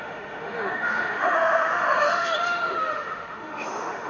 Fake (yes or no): yes